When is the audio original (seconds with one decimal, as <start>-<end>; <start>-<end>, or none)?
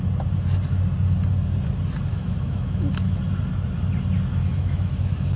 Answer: 0.0-2.1; 3.2-4.4